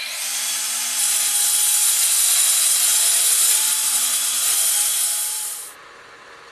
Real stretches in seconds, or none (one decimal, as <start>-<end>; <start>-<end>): 0.0-4.9; 5.7-6.5